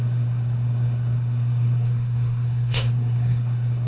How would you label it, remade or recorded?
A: remade